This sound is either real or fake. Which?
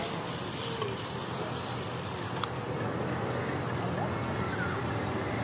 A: real